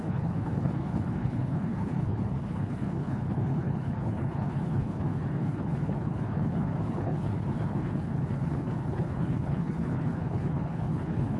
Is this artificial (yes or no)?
yes